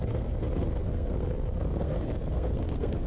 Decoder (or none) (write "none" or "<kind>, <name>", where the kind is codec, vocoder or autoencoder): codec, SNAC